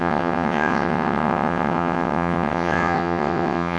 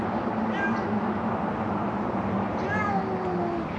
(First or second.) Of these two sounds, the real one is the second